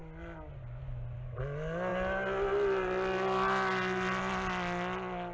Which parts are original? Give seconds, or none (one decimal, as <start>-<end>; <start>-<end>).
0.0-5.3